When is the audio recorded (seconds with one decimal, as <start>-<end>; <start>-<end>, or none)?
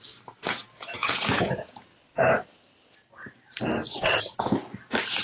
0.0-0.4; 1.8-5.2